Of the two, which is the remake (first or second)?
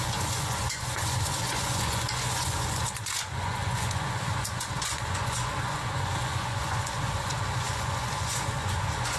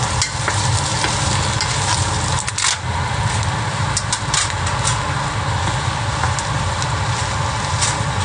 first